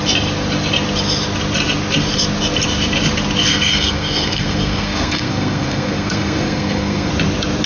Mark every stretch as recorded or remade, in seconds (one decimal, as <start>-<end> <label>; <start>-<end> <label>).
0.0-3.5 recorded; 3.5-7.1 remade; 7.1-7.7 recorded